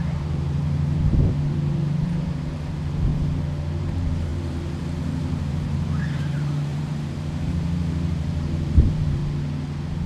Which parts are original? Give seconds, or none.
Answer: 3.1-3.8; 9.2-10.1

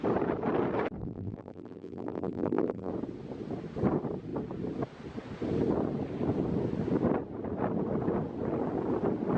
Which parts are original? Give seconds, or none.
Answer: 0.0-1.0; 2.9-9.4

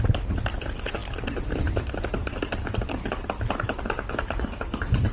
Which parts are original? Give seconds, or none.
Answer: 0.0-5.1

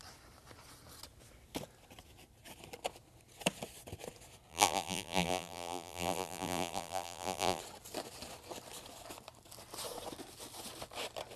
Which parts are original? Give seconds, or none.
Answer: 0.0-4.5; 7.6-11.4